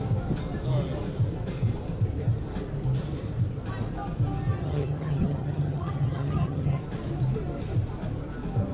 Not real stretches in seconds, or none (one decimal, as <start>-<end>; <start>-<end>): 4.6-6.8